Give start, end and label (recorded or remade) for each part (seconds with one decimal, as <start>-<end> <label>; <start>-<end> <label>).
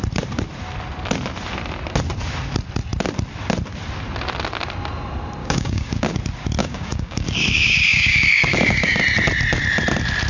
0.0-5.4 recorded; 5.4-6.0 remade; 6.0-6.6 recorded; 6.6-9.0 remade; 9.0-10.3 recorded